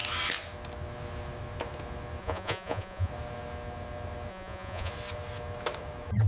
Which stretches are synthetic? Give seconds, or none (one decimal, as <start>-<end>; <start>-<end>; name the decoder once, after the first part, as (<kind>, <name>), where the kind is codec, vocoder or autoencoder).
2.2-3.1 (vocoder, Vocos); 4.3-4.9